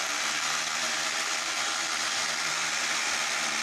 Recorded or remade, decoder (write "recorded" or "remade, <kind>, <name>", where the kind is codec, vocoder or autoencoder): remade, vocoder, BigVGAN v2